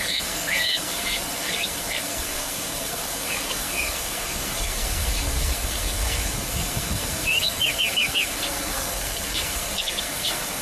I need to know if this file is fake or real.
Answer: fake